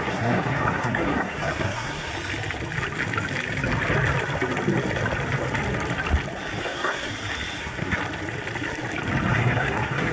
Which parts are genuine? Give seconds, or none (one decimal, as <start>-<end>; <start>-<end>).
2.1-6.6; 7.1-7.6; 8.0-9.3